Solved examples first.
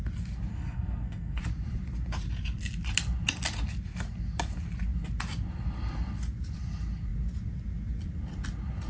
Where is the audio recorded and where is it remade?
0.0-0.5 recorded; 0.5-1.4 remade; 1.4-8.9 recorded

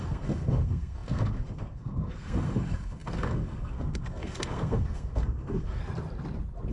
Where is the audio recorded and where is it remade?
0.0-5.8 remade; 5.8-6.7 recorded

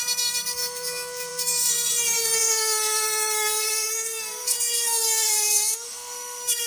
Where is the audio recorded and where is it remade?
0.0-6.7 remade

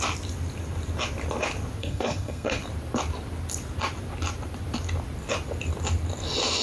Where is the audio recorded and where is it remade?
0.0-1.8 recorded; 1.8-2.6 remade; 2.6-6.6 recorded

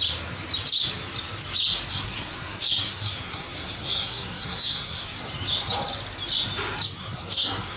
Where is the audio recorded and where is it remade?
0.0-1.9 recorded; 1.9-5.2 remade; 5.2-7.0 recorded; 7.0-7.8 remade

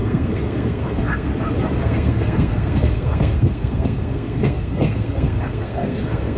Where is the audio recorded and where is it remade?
0.0-1.3 remade; 1.3-1.8 recorded; 1.8-6.4 remade

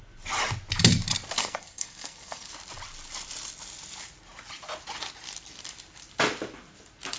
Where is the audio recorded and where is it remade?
0.0-1.4 recorded; 1.4-2.5 remade; 2.5-7.2 recorded